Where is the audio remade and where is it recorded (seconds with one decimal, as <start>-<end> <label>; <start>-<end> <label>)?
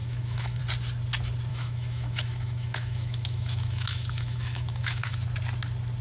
0.0-0.6 remade; 0.6-1.5 recorded; 1.5-5.1 remade; 5.1-6.0 recorded